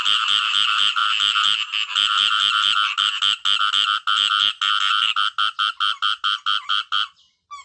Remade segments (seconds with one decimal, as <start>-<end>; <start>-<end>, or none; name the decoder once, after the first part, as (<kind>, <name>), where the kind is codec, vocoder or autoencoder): none